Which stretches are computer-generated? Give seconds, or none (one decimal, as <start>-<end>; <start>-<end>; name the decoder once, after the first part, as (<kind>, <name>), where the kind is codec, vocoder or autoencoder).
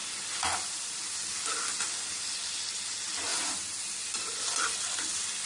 none